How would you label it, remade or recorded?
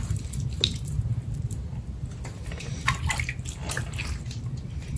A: recorded